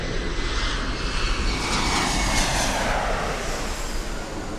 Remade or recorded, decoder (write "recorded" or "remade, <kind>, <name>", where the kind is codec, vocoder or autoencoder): recorded